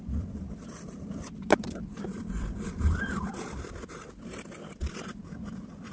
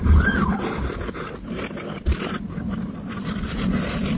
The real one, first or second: second